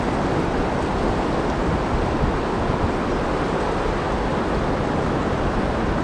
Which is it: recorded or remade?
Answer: recorded